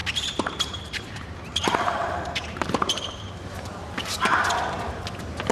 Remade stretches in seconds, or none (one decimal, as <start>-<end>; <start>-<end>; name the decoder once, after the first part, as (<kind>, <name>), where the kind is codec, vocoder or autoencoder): 0.0-3.3 (vocoder, BigVGAN v2)